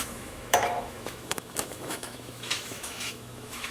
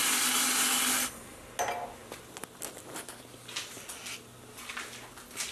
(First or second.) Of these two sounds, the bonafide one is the second